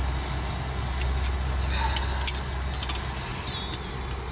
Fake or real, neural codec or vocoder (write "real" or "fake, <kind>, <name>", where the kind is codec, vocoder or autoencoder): real